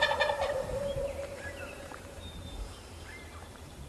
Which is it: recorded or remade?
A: remade